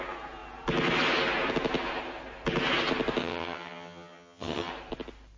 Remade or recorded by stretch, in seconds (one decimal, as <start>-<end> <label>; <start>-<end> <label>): 0.0-3.2 recorded; 3.2-4.7 remade; 4.7-5.4 recorded